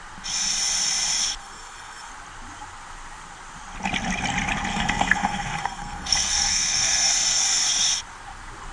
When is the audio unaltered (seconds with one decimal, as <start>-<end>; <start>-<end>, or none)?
0.0-1.4; 2.1-4.7; 7.4-8.7